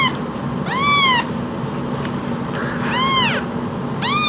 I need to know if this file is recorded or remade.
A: recorded